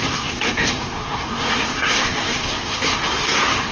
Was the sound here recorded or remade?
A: remade